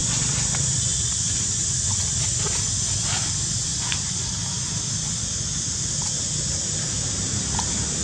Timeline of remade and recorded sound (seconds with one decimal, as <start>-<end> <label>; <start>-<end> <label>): 0.0-2.4 remade; 2.4-3.7 recorded; 3.7-4.3 remade; 4.3-8.0 recorded